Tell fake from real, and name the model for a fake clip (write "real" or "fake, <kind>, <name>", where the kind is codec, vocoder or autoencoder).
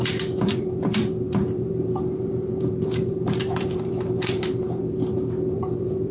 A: fake, vocoder, BigVGAN v2